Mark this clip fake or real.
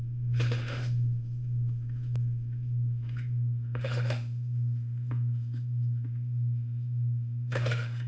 fake